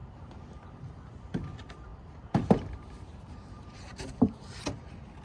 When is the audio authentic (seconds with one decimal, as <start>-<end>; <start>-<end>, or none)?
0.7-1.9; 4.6-5.2